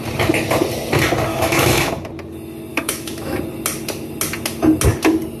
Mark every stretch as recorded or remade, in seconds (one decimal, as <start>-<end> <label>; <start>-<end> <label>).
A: 0.0-1.3 recorded; 1.3-1.9 remade; 1.9-2.7 recorded; 2.7-3.4 remade; 3.4-5.4 recorded